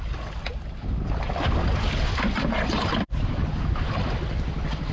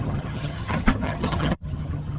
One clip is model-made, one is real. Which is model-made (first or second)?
second